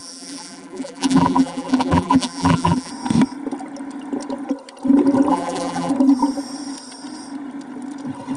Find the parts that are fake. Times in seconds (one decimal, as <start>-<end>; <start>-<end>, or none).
0.0-2.9; 5.3-5.9